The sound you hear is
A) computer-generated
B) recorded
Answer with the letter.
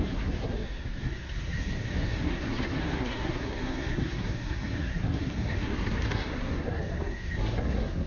A